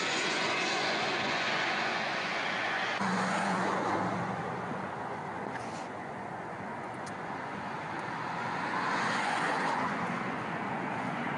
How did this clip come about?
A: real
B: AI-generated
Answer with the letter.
B